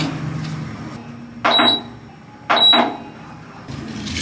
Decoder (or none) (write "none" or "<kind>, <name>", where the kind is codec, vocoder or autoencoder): none